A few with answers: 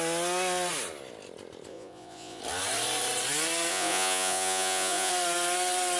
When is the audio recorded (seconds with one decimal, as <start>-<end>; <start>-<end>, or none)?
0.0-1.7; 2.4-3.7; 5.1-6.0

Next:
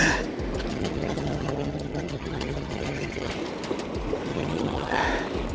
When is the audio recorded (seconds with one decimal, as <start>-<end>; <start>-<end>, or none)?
0.0-0.7; 3.3-4.3; 5.0-5.5

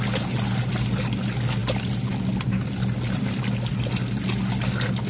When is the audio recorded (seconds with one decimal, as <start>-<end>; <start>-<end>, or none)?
0.0-5.1

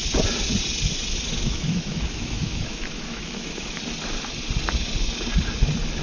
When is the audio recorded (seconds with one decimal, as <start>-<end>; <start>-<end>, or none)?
0.0-1.3; 3.8-6.0

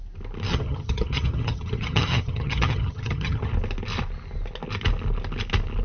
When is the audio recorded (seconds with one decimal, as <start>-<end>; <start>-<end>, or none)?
0.0-0.5; 3.5-5.8